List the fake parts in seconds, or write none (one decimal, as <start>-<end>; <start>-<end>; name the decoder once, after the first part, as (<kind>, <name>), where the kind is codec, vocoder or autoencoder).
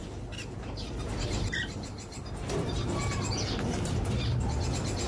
0.0-3.1 (vocoder, BigVGAN v2)